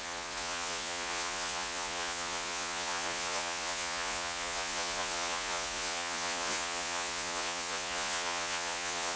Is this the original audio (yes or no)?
no